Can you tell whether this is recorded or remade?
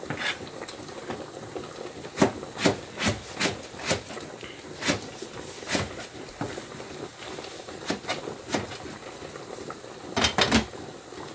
recorded